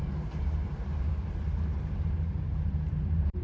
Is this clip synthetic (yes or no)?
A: yes